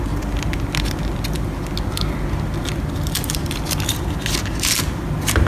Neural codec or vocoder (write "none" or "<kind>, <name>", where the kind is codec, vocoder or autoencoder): none